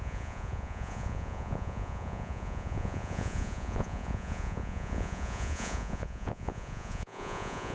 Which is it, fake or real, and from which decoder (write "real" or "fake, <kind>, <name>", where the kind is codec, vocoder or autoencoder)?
fake, vocoder, Vocos